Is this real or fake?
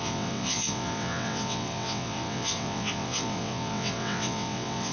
fake